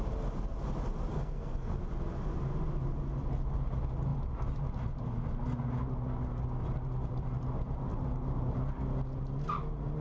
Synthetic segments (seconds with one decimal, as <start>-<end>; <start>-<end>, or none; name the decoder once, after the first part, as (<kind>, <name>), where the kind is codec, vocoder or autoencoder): 1.1-1.7 (codec, SNAC)